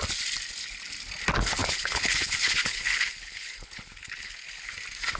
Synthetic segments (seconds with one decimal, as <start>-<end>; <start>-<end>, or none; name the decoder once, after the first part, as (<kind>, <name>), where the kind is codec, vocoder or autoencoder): 1.6-4.7 (codec, HILCodec)